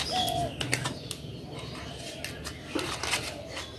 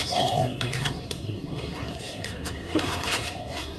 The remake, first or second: second